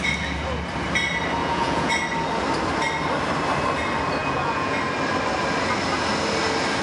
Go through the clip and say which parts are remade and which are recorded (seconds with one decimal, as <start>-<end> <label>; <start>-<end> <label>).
0.0-1.4 recorded; 1.4-1.9 remade; 1.9-4.2 recorded; 4.2-4.8 remade; 4.8-6.8 recorded